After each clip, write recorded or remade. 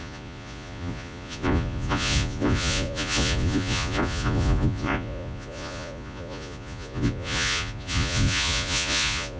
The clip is remade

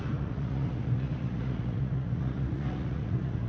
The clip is remade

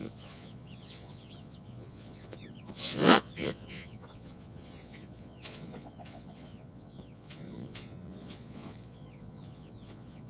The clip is remade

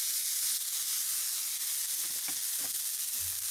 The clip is recorded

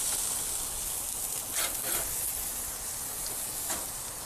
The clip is recorded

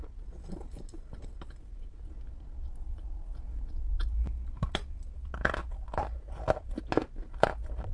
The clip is recorded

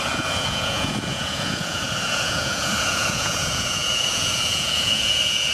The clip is remade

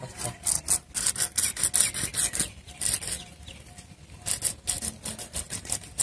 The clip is recorded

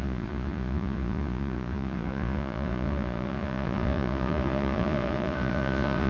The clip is remade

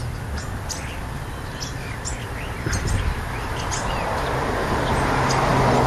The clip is recorded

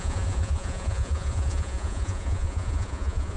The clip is remade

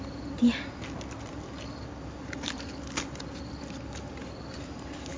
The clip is recorded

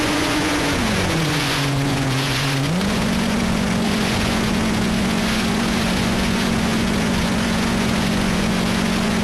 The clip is remade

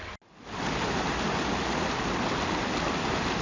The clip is recorded